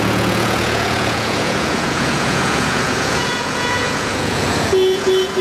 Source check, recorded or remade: remade